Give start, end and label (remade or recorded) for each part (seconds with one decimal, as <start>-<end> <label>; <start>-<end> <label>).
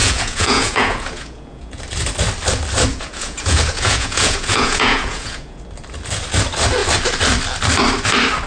0.0-1.8 remade; 1.8-2.9 recorded; 2.9-5.6 remade; 5.6-8.5 recorded